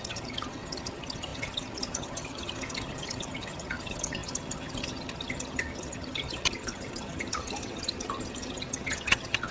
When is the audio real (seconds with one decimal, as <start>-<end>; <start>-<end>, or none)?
none